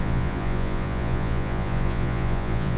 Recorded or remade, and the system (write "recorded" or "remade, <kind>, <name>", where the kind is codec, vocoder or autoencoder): remade, vocoder, Vocos